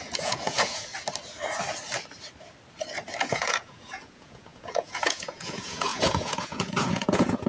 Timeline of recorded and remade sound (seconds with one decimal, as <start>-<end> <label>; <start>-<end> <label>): 0.0-0.9 remade; 0.9-3.3 recorded; 3.3-7.5 remade